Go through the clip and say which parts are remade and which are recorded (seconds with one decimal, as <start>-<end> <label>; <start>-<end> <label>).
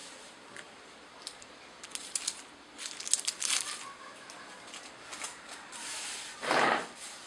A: 0.0-1.5 remade; 1.5-5.3 recorded; 5.3-6.2 remade; 6.2-7.3 recorded